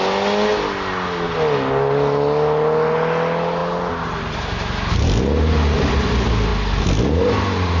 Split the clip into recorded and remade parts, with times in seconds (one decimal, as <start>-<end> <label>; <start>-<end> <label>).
0.0-7.8 recorded